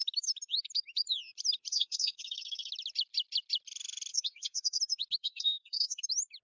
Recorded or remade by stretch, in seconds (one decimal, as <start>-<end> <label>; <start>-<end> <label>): 0.0-1.7 recorded; 1.7-2.7 remade; 2.7-4.1 recorded; 4.1-4.8 remade; 4.8-5.2 recorded; 5.2-6.0 remade; 6.0-6.4 recorded

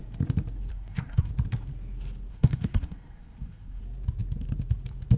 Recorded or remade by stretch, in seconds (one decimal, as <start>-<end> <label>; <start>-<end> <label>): 0.0-0.7 recorded; 0.7-1.3 remade; 1.3-2.3 recorded; 2.3-3.8 remade; 3.8-5.2 recorded

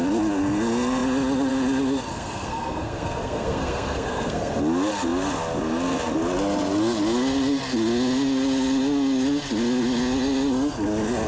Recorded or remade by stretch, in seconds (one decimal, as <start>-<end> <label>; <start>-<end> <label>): 0.0-2.1 recorded; 2.1-4.6 remade; 4.6-11.3 recorded

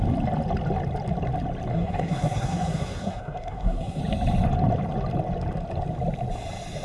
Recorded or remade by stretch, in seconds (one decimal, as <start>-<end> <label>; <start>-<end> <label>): 0.0-1.7 recorded; 1.7-4.0 remade; 4.0-6.8 recorded